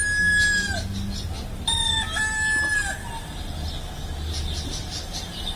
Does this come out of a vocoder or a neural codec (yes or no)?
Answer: no